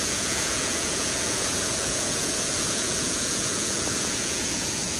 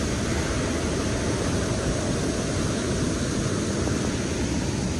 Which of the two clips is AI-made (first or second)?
first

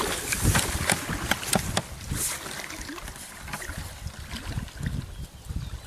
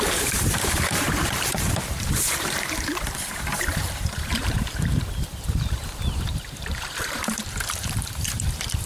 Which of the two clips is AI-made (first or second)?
second